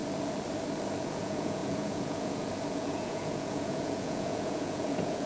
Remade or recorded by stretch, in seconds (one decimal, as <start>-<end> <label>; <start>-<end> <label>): 0.0-1.0 recorded; 1.0-5.3 remade